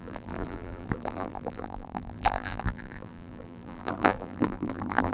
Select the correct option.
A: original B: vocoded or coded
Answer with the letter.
B